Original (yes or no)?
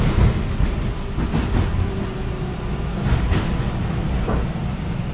yes